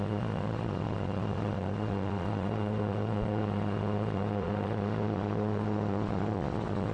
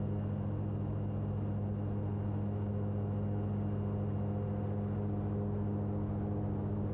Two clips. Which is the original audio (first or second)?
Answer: second